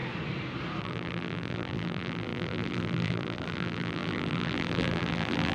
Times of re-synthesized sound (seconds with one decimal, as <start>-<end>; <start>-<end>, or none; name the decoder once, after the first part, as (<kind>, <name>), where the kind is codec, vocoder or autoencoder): 0.8-5.5 (vocoder, BigVGAN v2)